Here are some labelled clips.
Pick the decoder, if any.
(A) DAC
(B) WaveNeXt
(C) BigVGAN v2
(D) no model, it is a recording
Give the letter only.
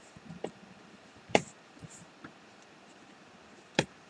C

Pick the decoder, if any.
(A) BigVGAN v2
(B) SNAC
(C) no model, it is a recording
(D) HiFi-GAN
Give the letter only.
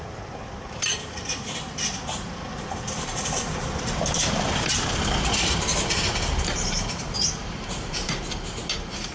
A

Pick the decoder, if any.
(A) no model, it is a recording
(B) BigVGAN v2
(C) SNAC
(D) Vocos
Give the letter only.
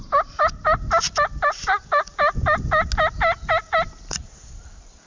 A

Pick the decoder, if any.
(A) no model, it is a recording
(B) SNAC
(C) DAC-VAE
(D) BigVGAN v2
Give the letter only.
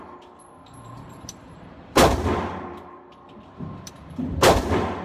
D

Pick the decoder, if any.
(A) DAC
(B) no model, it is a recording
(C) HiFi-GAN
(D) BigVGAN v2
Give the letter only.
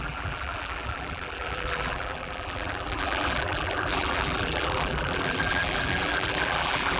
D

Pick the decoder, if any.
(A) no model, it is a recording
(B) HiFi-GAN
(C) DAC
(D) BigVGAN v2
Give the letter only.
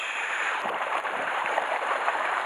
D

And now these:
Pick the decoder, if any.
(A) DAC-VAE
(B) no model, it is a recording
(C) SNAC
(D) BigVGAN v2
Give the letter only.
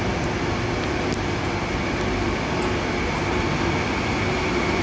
B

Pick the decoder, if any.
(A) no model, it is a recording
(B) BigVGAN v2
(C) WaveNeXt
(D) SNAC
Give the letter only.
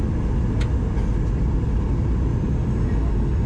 A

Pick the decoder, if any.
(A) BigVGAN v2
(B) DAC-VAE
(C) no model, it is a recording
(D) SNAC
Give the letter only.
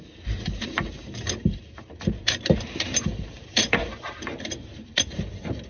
A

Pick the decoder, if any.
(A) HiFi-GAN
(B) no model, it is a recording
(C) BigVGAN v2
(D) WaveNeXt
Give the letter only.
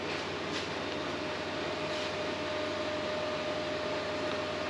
B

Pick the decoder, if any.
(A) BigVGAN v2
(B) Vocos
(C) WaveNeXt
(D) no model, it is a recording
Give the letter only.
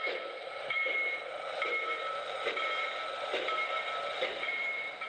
A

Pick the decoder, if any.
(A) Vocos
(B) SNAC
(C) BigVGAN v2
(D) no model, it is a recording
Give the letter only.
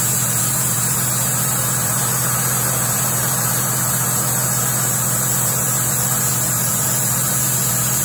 C